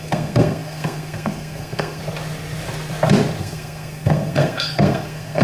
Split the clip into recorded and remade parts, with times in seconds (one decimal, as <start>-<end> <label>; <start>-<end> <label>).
0.0-2.0 remade; 2.0-3.4 recorded; 3.4-5.4 remade

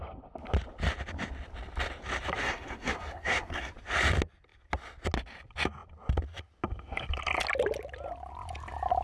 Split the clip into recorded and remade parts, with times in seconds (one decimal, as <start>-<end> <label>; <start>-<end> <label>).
0.0-2.4 recorded; 2.4-3.7 remade; 3.7-9.0 recorded